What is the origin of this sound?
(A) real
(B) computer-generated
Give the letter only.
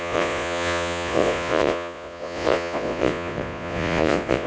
B